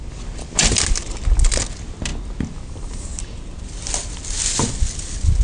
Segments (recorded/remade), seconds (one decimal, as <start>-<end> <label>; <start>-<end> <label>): 0.0-5.4 recorded